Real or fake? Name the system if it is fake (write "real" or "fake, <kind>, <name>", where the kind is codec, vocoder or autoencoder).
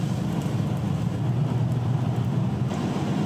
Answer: real